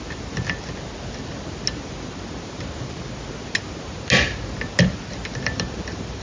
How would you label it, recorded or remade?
recorded